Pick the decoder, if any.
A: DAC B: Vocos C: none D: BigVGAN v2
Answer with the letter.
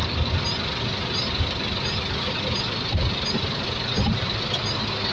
C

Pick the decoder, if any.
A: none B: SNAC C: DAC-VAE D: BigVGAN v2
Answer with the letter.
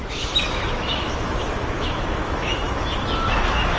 C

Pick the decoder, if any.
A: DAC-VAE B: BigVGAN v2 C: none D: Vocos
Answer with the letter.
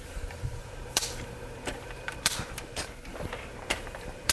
B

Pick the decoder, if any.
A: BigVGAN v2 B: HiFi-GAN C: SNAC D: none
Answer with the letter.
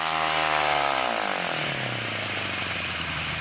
D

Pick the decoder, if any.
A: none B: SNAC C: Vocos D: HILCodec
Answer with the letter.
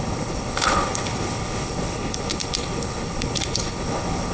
D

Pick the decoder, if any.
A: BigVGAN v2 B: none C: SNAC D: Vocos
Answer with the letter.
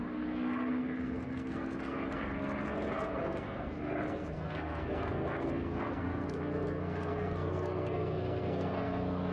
C